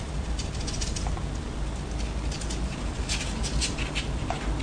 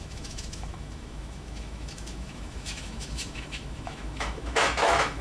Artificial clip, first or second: second